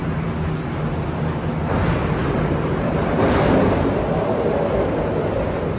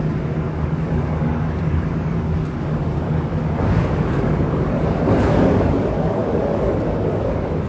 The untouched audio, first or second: first